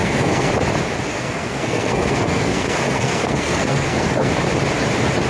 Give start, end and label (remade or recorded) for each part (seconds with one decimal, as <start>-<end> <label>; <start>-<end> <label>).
0.0-0.5 remade; 0.5-1.1 recorded; 1.1-4.3 remade; 4.3-5.3 recorded

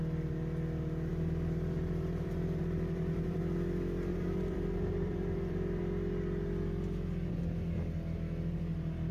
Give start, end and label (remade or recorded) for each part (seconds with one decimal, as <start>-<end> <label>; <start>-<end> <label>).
0.0-1.1 recorded; 1.1-3.4 remade; 3.4-4.1 recorded; 4.1-5.8 remade; 5.8-9.1 recorded

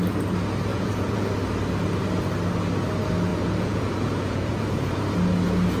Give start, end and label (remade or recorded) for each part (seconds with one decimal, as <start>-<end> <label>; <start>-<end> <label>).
0.0-0.7 recorded; 0.7-1.3 remade; 1.3-3.3 recorded; 3.3-5.0 remade; 5.0-5.8 recorded